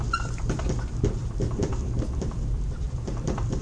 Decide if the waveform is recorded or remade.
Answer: remade